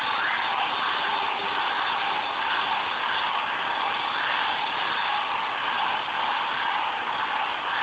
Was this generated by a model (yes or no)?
no